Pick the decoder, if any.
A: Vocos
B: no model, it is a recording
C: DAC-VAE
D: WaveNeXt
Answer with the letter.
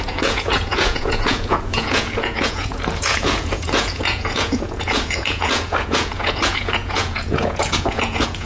A